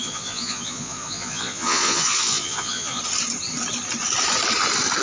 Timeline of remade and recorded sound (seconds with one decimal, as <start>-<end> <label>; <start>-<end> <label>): 0.0-3.0 remade; 3.0-5.0 recorded

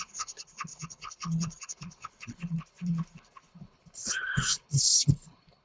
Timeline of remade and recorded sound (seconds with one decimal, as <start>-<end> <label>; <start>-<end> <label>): 0.0-5.6 remade